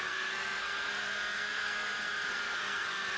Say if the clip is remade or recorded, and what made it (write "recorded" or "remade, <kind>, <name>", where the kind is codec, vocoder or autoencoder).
remade, codec, SNAC